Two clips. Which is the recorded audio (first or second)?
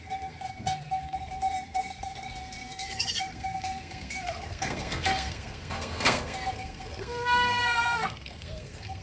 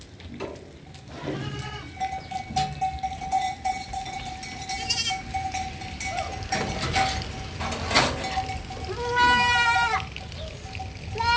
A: second